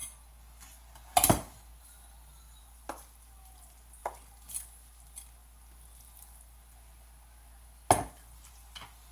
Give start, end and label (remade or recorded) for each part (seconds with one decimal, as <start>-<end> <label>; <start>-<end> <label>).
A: 0.0-2.6 remade; 2.6-9.1 recorded